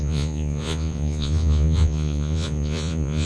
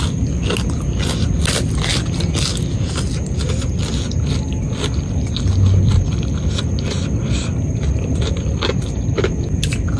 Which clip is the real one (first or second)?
second